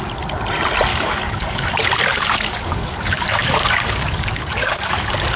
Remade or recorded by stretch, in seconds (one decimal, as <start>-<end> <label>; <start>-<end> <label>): 0.0-0.9 recorded; 0.9-1.7 remade; 1.7-2.1 recorded; 2.1-5.4 remade